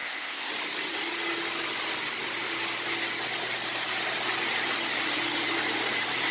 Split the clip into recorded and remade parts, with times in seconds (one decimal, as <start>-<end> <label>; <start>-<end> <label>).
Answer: 0.0-0.5 remade; 0.5-6.3 recorded